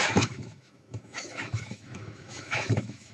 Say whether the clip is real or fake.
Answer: fake